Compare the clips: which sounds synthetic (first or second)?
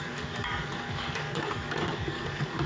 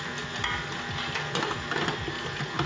first